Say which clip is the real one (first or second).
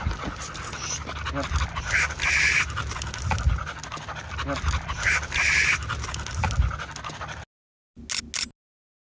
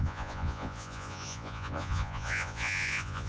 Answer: first